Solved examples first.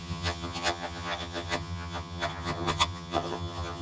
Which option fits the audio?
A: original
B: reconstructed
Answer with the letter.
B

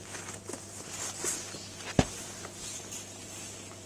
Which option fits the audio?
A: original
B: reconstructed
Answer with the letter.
A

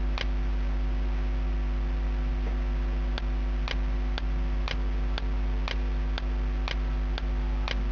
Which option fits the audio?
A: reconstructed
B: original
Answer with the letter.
B